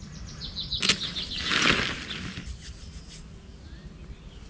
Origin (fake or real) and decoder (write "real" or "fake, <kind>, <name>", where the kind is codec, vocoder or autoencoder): real